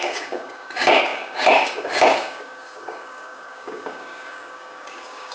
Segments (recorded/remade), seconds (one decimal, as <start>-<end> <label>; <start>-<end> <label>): 0.0-5.3 remade